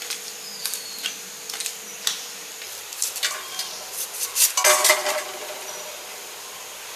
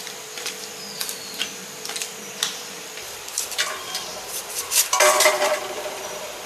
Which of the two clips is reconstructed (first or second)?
second